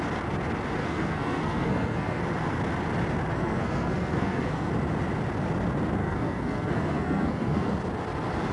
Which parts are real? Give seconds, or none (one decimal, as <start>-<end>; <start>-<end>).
0.0-0.8; 2.2-3.3; 4.7-6.0; 7.7-8.5